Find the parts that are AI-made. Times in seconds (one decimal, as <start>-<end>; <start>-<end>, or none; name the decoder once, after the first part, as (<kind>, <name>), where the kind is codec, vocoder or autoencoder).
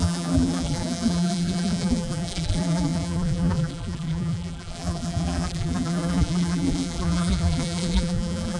0.0-8.6 (vocoder, BigVGAN v2)